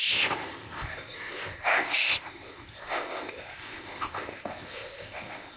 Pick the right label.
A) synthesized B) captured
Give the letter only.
A